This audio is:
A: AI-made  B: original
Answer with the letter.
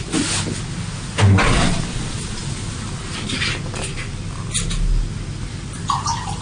B